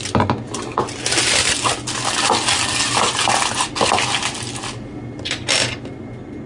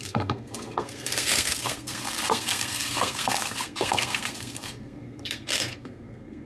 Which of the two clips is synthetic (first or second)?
second